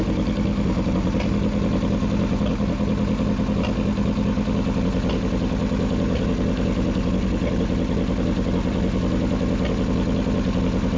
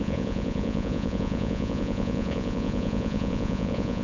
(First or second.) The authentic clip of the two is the first